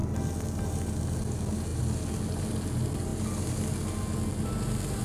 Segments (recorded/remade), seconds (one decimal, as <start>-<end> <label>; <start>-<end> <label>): 0.0-5.0 recorded